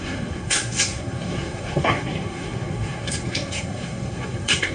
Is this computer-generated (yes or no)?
yes